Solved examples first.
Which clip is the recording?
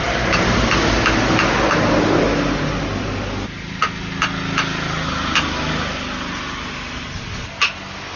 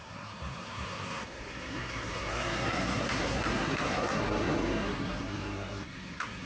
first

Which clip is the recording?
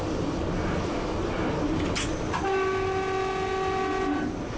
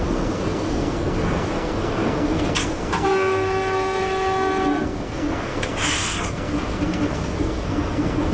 first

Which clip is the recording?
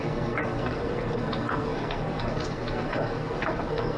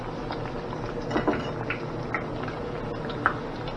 second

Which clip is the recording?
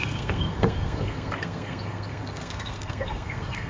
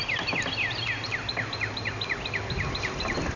second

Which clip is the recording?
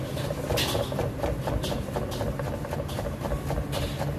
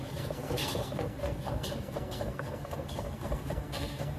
first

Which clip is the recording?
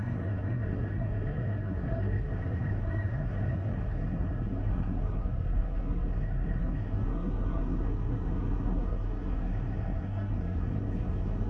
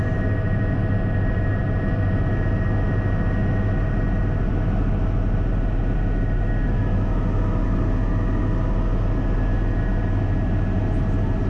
second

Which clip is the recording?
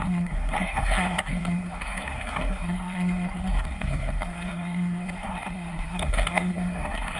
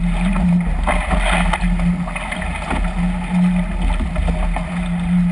second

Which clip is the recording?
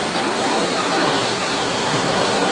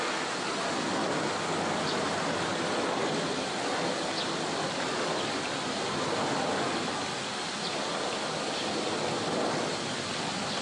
second